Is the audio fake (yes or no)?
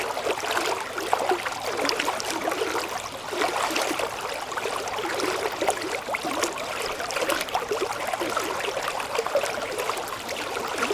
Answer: no